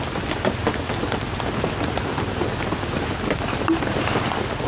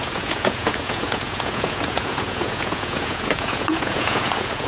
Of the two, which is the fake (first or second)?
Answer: second